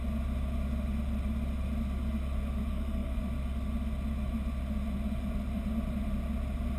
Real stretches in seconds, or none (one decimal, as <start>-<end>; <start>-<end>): 0.0-2.7; 3.2-6.8